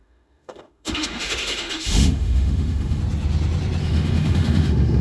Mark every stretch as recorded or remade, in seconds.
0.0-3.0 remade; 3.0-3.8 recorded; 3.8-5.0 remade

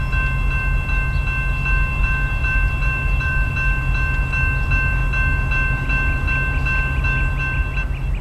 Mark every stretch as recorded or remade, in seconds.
0.0-2.4 recorded; 2.4-3.5 remade; 3.5-8.2 recorded

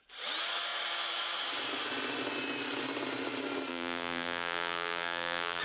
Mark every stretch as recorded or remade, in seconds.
0.0-3.7 recorded; 3.7-5.6 remade

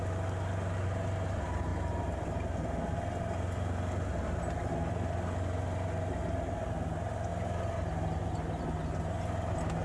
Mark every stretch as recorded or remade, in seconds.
0.0-9.8 recorded

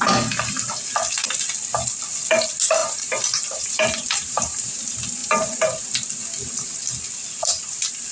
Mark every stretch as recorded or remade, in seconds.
0.0-2.8 recorded; 2.8-4.8 remade; 4.8-5.2 recorded; 5.2-5.8 remade; 5.8-8.1 recorded